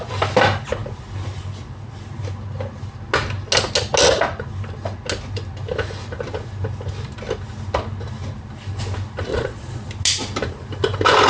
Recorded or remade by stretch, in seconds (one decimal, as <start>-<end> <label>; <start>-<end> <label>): 0.0-9.3 recorded; 9.3-9.9 remade; 9.9-11.3 recorded